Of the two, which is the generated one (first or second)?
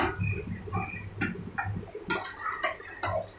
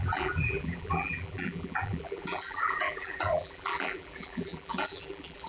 second